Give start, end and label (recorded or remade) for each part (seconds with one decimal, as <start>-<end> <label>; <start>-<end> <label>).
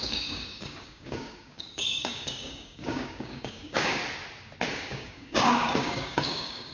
0.0-4.0 remade; 4.0-4.7 recorded; 4.7-6.7 remade